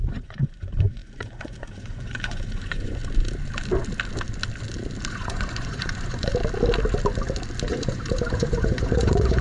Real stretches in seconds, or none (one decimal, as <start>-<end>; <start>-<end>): 3.0-5.1; 6.3-7.7